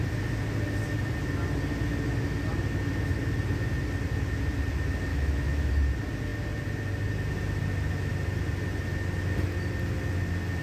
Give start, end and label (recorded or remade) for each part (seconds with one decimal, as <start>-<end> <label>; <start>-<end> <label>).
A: 0.0-5.1 recorded; 5.1-5.7 remade; 5.7-10.6 recorded